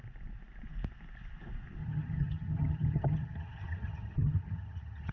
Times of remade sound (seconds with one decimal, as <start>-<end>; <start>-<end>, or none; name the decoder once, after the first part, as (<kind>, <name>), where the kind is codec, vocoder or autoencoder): 1.8-5.1 (vocoder, HiFi-GAN)